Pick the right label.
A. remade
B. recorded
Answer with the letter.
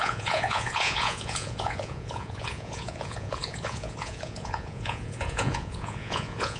A